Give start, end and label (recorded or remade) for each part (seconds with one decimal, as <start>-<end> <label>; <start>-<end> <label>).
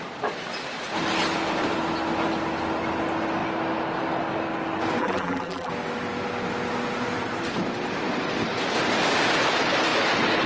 0.0-5.0 recorded; 5.0-5.7 remade; 5.7-10.5 recorded